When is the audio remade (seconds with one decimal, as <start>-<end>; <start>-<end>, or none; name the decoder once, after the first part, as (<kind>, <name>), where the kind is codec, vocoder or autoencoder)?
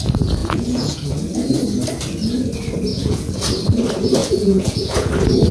0.4-1.1 (vocoder, Vocos); 2.9-3.4; 4.2-5.1